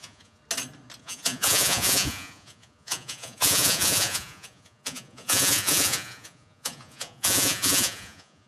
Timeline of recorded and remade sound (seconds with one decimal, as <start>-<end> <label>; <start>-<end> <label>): 0.0-0.4 remade; 0.4-1.0 recorded; 1.0-8.5 remade